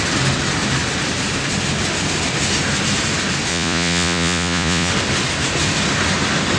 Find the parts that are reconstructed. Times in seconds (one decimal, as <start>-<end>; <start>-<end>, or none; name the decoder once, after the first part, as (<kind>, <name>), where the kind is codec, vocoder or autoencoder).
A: 3.5-4.9 (vocoder, Vocos)